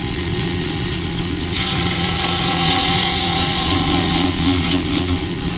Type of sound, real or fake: fake